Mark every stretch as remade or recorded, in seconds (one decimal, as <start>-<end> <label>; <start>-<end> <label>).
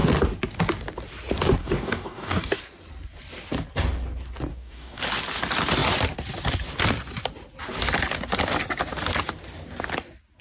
0.0-1.6 recorded; 1.6-2.6 remade; 2.6-4.5 recorded; 4.5-5.0 remade; 5.0-10.4 recorded